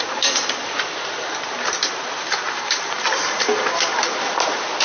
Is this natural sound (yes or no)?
yes